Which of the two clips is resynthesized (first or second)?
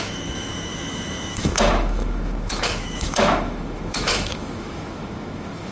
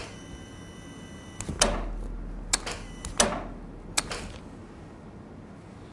first